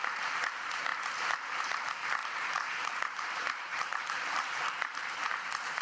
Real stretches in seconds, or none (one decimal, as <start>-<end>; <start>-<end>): 0.9-1.6